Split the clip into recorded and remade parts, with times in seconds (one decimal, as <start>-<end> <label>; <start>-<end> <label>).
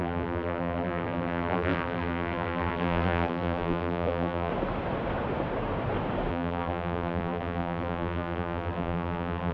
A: 0.0-4.5 remade; 4.5-6.3 recorded; 6.3-9.5 remade